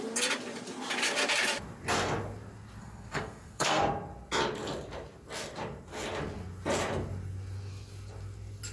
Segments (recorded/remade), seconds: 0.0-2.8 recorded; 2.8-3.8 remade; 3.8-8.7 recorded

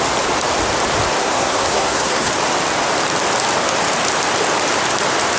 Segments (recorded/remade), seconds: 0.0-1.2 recorded; 1.2-2.3 remade; 2.3-5.4 recorded

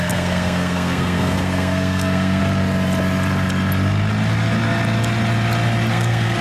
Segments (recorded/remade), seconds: 0.0-2.4 remade; 2.4-5.9 recorded; 5.9-6.4 remade

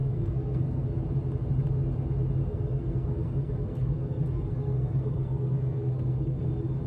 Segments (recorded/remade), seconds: 0.0-1.0 remade; 1.0-2.4 recorded; 2.4-6.5 remade; 6.5-6.9 recorded

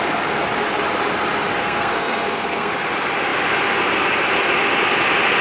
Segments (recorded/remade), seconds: 0.0-1.6 recorded; 1.6-2.7 remade; 2.7-5.4 recorded